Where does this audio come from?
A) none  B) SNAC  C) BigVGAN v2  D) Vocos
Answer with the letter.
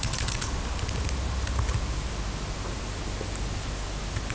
A